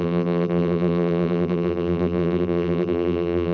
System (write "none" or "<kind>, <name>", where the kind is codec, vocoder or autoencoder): vocoder, BigVGAN v2